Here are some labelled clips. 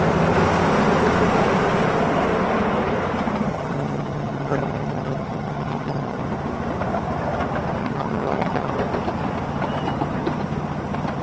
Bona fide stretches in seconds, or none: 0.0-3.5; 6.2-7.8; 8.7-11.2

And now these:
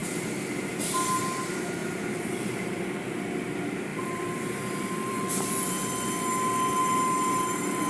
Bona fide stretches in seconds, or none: 0.9-1.8; 2.9-3.9; 5.9-7.9

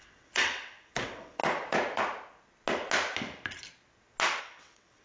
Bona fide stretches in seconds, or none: 1.4-4.4